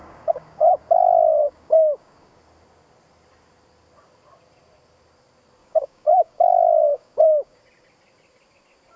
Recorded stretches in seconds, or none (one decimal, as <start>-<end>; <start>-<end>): 0.8-1.4; 2.4-5.6; 7.6-9.0